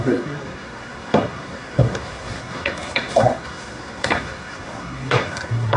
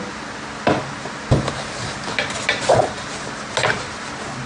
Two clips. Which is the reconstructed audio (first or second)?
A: first